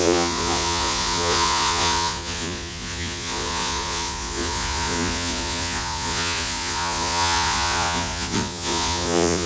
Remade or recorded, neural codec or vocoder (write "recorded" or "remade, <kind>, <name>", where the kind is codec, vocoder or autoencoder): remade, vocoder, Vocos